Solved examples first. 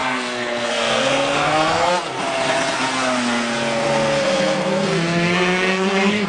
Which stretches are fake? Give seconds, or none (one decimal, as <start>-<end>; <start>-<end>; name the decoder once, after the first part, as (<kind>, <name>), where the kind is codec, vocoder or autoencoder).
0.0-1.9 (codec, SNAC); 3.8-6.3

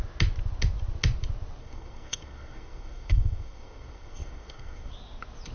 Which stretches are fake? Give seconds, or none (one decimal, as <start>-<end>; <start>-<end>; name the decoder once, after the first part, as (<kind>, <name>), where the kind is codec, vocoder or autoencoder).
1.6-4.9 (codec, SNAC)

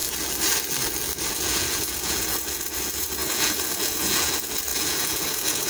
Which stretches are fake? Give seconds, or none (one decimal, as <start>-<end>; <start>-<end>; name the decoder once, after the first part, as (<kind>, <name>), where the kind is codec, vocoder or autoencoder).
1.3-5.7 (vocoder, Vocos)

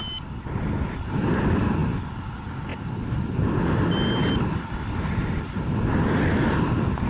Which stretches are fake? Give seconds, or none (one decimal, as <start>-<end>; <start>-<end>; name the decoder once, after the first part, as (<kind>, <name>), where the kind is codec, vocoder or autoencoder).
none